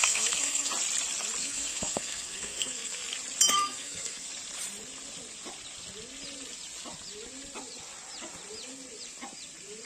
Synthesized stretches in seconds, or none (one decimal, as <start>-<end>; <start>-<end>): 0.0-0.7; 1.4-3.0; 3.5-4.3